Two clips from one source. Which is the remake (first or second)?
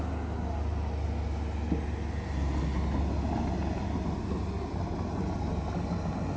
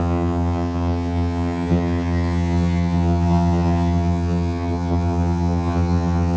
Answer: second